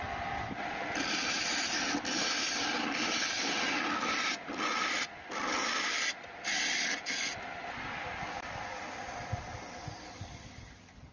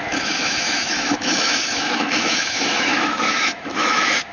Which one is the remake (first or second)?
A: second